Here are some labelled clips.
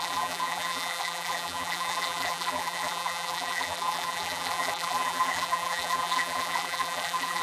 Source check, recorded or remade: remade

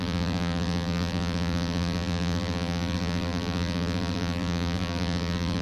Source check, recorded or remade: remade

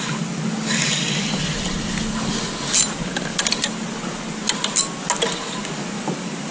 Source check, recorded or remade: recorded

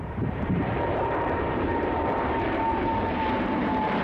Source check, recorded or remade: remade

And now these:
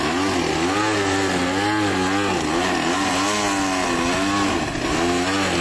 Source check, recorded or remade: recorded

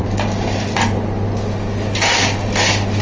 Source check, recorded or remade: recorded